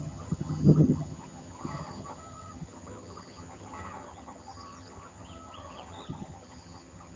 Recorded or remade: remade